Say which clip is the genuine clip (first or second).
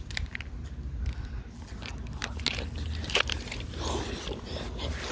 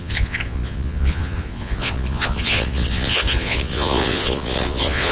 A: first